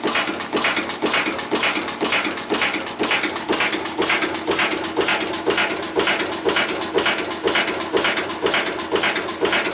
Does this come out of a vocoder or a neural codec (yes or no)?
no